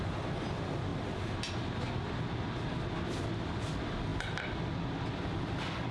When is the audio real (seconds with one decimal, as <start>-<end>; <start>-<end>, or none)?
0.0-5.9